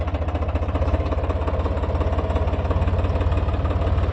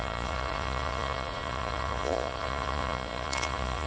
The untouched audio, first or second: first